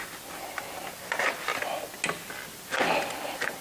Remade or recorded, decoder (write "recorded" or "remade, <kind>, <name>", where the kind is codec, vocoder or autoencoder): recorded